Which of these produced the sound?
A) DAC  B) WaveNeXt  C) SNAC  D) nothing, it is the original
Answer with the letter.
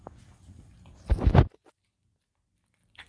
D